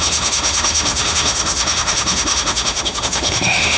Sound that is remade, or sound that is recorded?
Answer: remade